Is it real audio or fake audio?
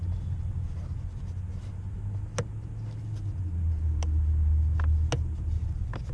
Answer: real